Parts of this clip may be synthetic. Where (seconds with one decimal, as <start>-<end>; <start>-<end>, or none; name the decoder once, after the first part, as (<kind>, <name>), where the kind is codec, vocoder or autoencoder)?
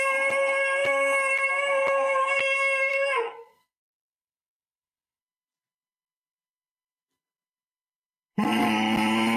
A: 2.9-5.2 (codec, SNAC)